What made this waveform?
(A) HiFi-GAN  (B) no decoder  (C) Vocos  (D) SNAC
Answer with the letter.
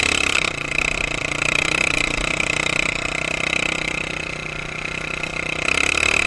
B